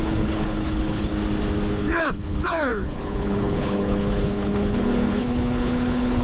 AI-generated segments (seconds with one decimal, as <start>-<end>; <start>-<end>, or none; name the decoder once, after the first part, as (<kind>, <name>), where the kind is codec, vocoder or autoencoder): 0.0-1.1 (codec, HILCodec); 1.7-6.2